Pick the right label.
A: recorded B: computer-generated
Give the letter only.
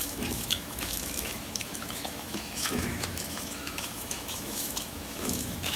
B